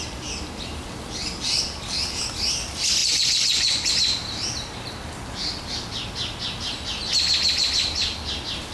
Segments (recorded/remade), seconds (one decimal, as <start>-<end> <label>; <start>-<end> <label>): 0.0-3.0 recorded; 3.0-3.9 remade; 3.9-8.7 recorded